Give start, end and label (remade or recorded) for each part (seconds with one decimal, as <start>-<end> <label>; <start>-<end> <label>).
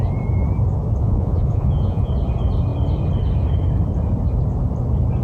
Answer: 0.0-1.0 recorded; 1.0-2.1 remade; 2.1-5.2 recorded